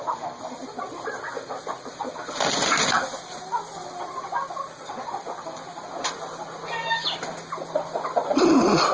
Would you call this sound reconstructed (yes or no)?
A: no